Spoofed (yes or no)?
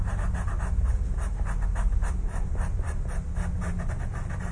no